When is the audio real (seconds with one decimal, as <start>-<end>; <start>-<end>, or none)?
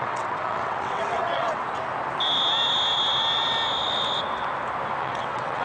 1.6-5.0